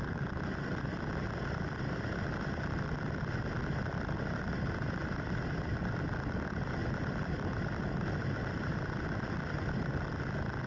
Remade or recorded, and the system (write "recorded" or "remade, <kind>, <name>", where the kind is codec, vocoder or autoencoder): recorded